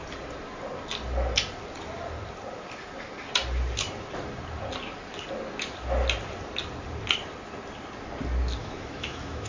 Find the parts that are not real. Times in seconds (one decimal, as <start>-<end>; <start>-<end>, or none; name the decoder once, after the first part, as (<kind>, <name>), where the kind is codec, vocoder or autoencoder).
8.6-9.5 (autoencoder, DAC-VAE)